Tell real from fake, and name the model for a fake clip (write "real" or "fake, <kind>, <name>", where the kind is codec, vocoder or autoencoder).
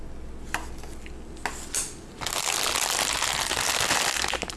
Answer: real